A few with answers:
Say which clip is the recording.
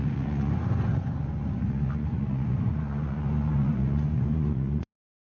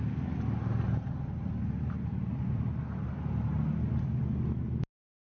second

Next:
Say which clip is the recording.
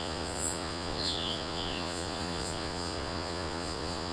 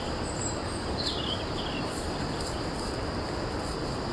second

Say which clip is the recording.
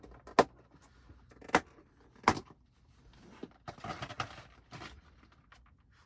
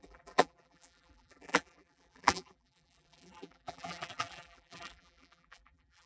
first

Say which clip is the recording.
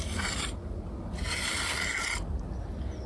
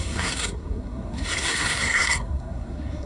first